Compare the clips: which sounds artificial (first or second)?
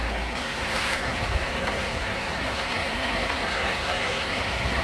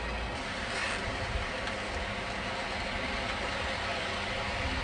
first